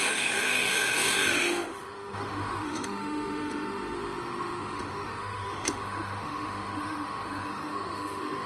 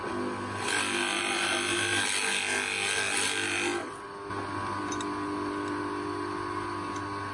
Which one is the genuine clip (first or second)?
second